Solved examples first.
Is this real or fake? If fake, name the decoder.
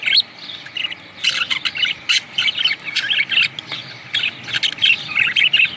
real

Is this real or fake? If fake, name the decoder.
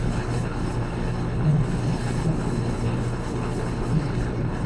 fake, codec, HILCodec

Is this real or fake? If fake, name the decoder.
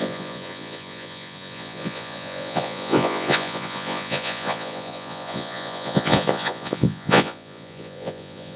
fake, vocoder, Vocos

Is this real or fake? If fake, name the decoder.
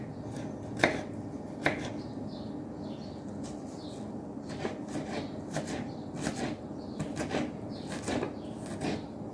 real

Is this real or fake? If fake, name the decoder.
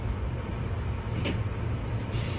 fake, vocoder, BigVGAN v2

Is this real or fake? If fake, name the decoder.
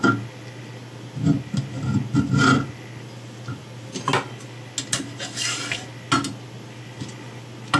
real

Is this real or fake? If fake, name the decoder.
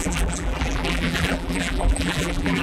fake, vocoder, BigVGAN v2